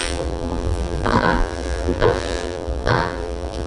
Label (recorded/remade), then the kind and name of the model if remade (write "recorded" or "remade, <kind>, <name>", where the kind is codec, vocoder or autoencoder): remade, vocoder, BigVGAN v2